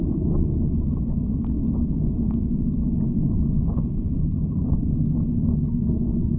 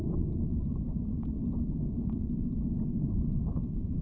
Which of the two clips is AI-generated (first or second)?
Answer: second